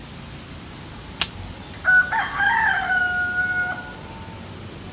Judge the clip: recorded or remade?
recorded